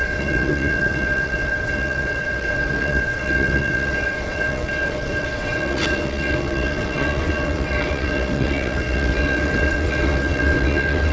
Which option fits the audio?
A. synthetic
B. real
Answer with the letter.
A